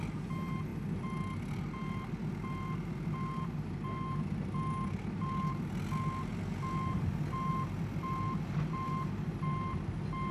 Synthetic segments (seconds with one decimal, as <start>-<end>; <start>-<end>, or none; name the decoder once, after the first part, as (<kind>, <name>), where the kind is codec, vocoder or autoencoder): none